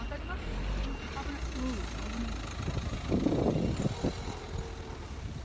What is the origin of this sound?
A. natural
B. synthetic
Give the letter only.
A